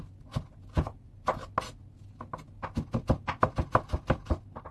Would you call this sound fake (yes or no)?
no